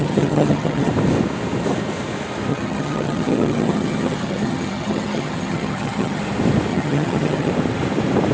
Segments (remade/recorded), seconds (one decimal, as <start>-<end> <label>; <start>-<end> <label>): 0.0-0.9 remade; 0.9-2.5 recorded; 2.5-6.2 remade; 6.2-6.7 recorded; 6.7-7.5 remade; 7.5-8.3 recorded